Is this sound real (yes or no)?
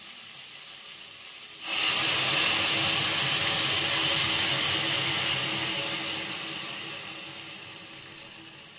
yes